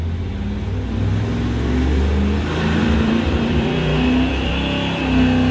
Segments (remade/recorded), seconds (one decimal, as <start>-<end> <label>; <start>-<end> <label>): 0.0-2.8 recorded; 2.8-4.5 remade; 4.5-5.5 recorded